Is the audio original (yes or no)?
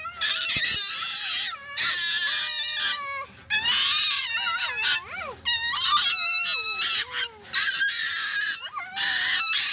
yes